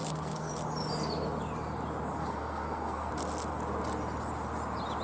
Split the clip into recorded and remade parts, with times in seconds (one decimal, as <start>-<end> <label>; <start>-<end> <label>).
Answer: 0.0-0.5 remade; 0.5-2.2 recorded; 2.2-3.1 remade; 3.1-5.0 recorded